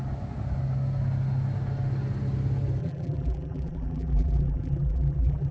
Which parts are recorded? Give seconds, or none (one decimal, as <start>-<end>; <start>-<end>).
0.0-2.8